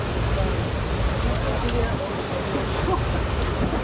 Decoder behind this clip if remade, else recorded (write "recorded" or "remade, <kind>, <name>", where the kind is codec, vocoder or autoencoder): recorded